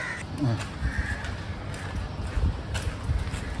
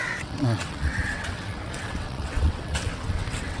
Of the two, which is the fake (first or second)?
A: second